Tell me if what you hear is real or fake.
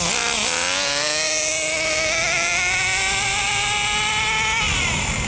real